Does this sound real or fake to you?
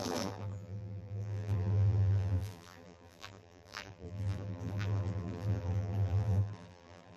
fake